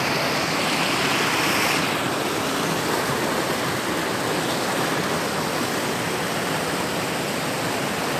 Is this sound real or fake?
real